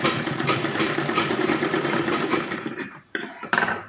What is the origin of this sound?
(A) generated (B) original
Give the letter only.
A